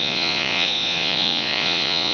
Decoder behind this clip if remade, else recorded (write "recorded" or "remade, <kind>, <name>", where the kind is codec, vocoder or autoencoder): remade, vocoder, Vocos